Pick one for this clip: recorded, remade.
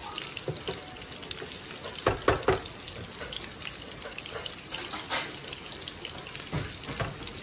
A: recorded